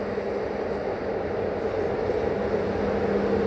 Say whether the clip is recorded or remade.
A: recorded